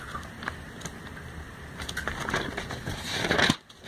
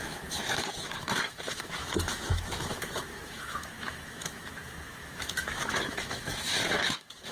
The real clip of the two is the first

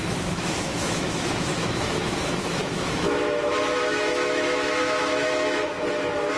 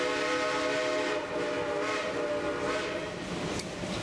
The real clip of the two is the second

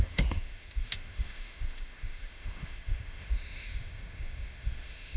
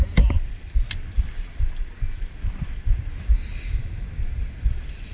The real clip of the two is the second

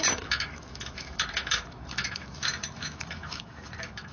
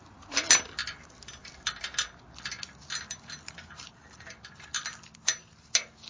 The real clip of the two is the second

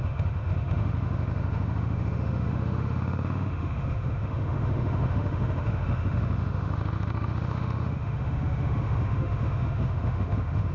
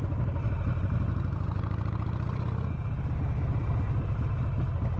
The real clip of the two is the second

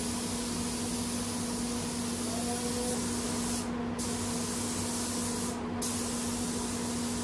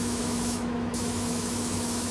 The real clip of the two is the first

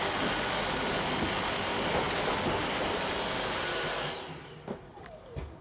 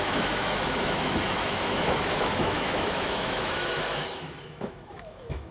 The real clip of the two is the first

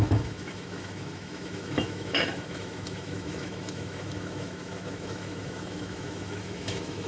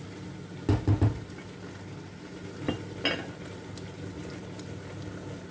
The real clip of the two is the second